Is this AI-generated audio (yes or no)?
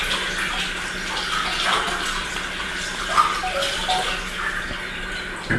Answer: no